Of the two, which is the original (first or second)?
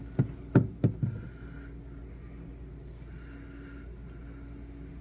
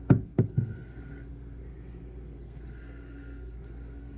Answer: first